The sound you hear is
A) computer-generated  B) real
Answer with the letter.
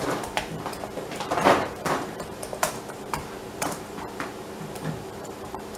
A